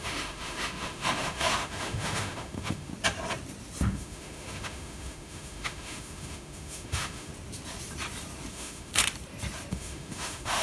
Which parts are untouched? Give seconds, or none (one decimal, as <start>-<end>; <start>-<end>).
2.9-3.8; 7.3-8.5; 8.9-9.7